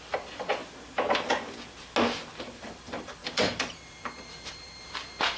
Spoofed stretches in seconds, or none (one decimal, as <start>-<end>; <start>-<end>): 0.0-0.6; 2.4-5.4